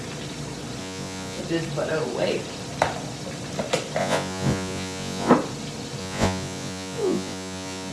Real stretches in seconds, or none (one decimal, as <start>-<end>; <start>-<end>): 0.0-0.8; 1.4-4.0; 5.3-6.0